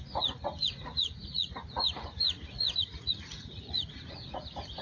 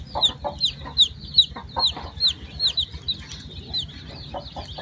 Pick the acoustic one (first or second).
second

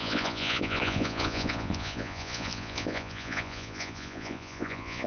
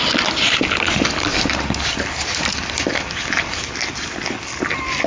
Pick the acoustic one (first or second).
second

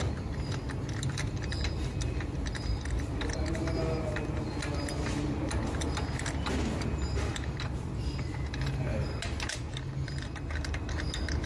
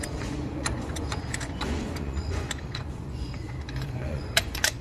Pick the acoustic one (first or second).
first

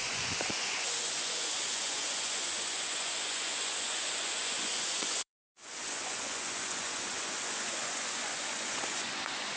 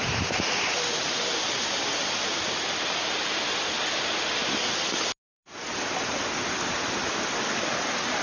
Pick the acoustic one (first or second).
second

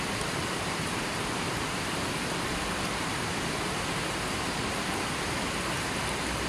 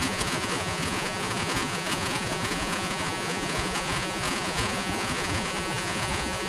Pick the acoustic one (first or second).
first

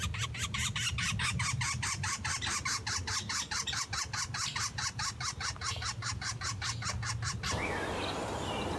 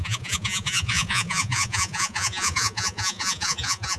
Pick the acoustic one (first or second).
first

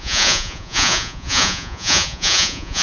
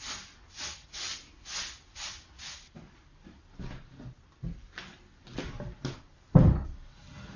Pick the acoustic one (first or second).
second